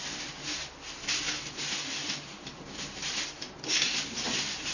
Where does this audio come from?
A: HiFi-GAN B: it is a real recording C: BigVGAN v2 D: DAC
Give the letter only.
B